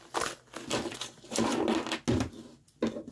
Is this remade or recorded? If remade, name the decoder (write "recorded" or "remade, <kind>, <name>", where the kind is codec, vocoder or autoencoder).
recorded